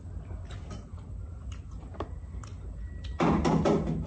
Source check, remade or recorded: recorded